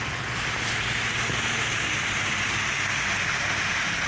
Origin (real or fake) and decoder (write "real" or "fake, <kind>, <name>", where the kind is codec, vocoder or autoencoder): real